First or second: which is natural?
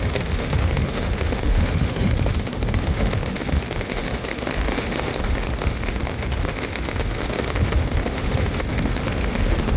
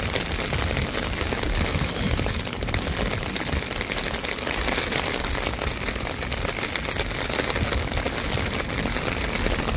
second